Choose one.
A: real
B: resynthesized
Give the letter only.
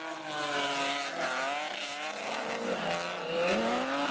A